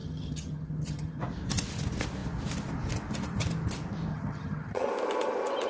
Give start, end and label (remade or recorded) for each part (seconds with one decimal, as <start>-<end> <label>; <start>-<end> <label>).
0.0-1.2 remade; 1.2-4.1 recorded; 4.1-4.9 remade; 4.9-5.7 recorded